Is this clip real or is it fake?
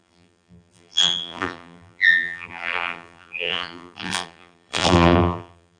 fake